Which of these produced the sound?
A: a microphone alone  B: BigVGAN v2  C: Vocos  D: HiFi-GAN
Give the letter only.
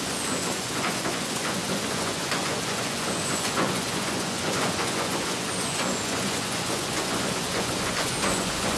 C